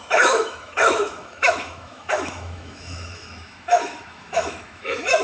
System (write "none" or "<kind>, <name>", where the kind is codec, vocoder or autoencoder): autoencoder, DAC-VAE